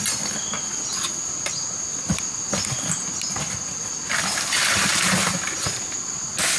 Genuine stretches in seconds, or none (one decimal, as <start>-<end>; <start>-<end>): 0.0-6.6